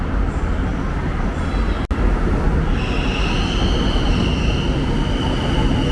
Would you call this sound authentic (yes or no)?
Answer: yes